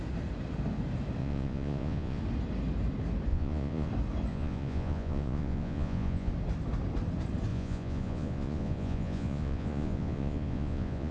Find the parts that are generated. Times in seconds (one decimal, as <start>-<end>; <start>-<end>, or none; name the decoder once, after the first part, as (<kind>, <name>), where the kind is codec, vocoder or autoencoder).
1.2-2.2 (vocoder, Vocos); 3.3-3.9; 4.3-6.3; 7.5-11.1